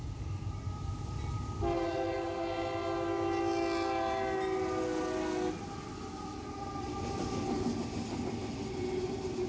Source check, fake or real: real